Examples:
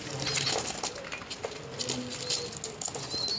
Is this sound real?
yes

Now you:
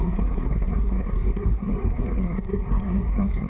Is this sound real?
no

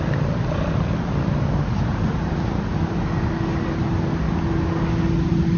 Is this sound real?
yes